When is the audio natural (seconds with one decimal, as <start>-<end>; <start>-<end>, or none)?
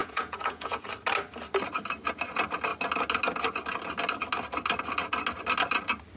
0.9-6.2